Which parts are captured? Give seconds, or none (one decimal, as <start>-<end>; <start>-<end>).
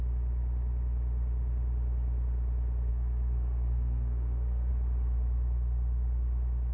0.0-2.9; 4.7-6.7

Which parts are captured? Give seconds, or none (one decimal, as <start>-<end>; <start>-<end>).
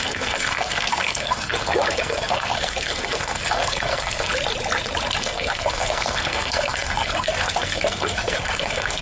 4.3-5.2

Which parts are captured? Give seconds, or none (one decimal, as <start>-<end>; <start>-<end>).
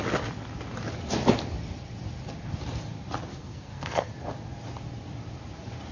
0.0-3.3; 4.1-5.9